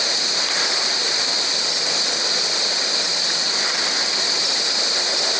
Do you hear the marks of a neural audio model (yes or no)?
no